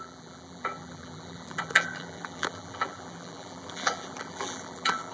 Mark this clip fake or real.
fake